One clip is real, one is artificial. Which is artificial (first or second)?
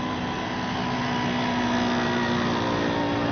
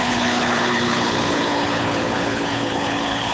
second